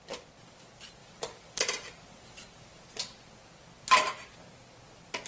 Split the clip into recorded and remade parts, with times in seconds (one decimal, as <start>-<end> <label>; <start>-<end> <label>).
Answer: 0.0-1.0 recorded; 1.0-3.0 remade; 3.0-5.3 recorded